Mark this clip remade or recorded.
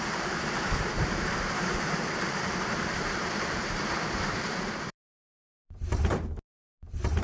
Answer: remade